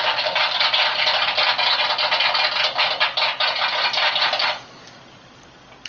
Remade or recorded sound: recorded